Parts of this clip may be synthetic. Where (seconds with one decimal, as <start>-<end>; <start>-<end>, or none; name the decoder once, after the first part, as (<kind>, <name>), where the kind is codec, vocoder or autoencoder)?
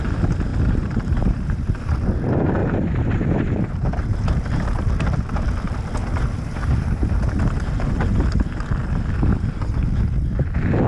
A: 0.5-1.9 (vocoder, BigVGAN v2); 2.6-4.9; 6.0-7.1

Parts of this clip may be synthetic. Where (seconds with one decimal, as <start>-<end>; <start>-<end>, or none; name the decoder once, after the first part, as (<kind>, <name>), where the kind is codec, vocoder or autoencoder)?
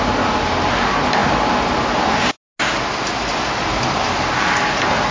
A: none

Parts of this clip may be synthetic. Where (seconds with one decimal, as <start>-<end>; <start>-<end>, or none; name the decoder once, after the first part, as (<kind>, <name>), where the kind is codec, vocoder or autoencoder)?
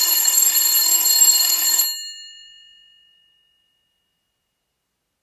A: 0.0-1.8 (codec, SNAC)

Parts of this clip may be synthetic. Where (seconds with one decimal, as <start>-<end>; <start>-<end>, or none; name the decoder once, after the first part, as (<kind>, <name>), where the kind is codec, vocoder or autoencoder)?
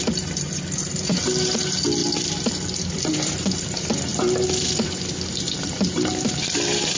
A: 0.0-7.0 (vocoder, BigVGAN v2)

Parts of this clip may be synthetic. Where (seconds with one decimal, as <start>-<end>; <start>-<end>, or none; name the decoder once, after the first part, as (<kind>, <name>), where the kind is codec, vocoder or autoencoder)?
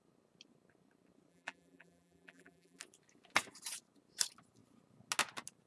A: 1.3-2.8 (vocoder, BigVGAN v2)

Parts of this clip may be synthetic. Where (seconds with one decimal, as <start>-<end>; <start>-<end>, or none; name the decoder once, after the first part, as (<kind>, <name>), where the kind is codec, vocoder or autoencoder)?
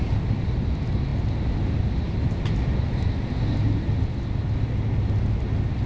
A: none